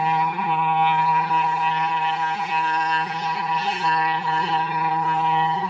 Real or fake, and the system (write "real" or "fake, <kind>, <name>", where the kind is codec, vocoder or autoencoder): fake, codec, SNAC